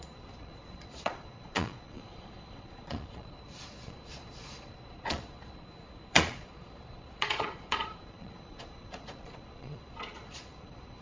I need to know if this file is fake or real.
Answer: fake